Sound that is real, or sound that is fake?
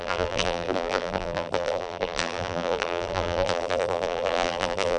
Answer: fake